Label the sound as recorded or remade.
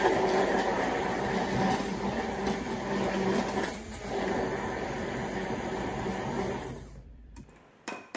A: remade